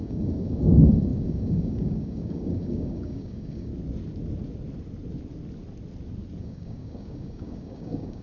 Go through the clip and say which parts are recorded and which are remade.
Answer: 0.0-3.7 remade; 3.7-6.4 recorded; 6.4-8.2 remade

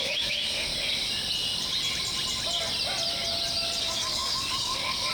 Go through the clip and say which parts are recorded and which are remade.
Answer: 0.0-0.7 remade; 0.7-3.8 recorded; 3.8-5.1 remade